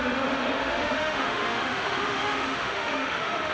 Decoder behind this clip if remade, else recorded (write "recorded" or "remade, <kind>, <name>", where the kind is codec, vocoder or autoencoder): remade, autoencoder, DAC-VAE